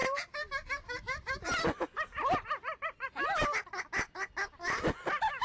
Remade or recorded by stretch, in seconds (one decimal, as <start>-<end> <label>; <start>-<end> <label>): 0.0-3.2 remade; 3.2-5.4 recorded